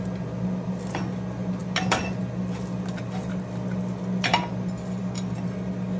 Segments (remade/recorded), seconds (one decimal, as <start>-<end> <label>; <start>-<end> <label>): 0.0-6.0 recorded